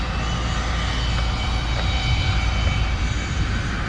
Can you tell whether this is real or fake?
real